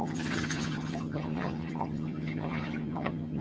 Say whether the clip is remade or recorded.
remade